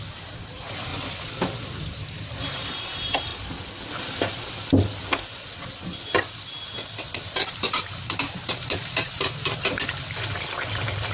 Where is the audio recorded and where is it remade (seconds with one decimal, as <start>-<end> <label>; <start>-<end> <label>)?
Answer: 0.0-0.9 remade; 0.9-1.8 recorded; 1.8-3.3 remade; 3.3-7.5 recorded; 7.5-11.1 remade